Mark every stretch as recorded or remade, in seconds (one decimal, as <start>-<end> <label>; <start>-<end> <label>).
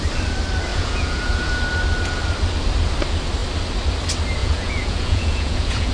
0.0-0.7 recorded; 0.7-1.6 remade; 1.6-4.4 recorded; 4.4-5.9 remade